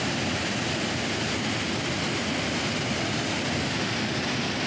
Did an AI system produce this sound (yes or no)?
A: yes